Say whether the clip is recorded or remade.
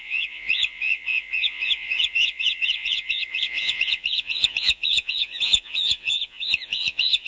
remade